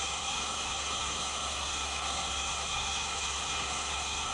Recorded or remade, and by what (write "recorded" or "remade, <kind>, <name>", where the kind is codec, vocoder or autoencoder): remade, codec, SNAC